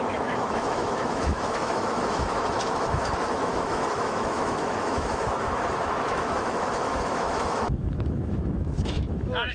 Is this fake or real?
fake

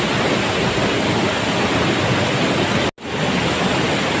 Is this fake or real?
real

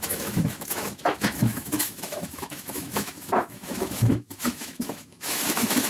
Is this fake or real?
fake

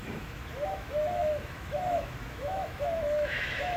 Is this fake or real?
fake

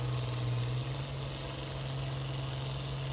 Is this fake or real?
real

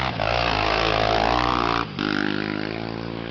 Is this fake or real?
real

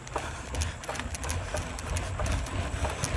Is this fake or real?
real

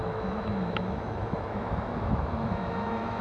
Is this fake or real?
fake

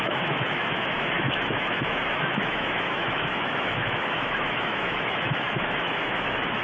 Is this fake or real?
fake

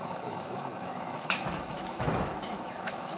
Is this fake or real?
fake